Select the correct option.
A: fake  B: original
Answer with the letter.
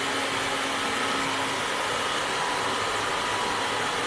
B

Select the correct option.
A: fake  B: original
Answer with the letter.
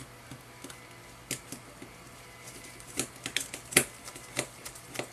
B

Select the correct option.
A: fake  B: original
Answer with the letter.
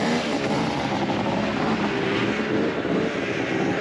A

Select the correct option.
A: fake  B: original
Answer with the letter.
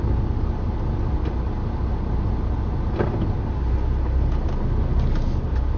B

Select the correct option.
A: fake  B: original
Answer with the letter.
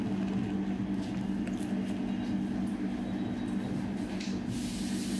B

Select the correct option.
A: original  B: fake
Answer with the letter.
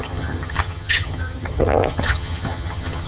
B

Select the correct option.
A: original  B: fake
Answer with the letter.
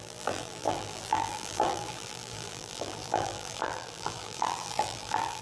B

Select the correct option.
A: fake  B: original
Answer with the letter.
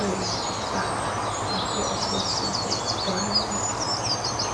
B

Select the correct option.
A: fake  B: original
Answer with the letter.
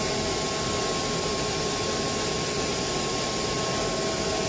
B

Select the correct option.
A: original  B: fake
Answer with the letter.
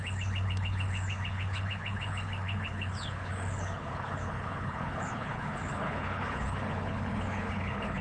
B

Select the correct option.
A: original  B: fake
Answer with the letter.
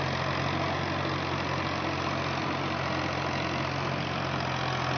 A